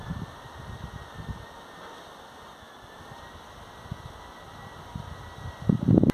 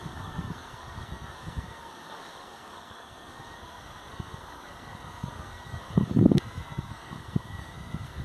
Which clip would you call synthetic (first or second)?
second